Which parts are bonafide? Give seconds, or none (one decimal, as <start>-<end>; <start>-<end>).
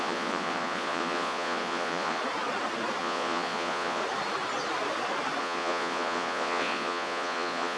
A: 2.2-3.0; 4.0-5.4